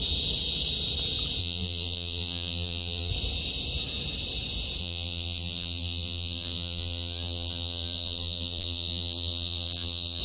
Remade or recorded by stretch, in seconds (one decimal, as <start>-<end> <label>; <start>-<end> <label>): 0.0-1.4 recorded; 1.4-3.1 remade; 3.1-4.8 recorded; 4.8-10.2 remade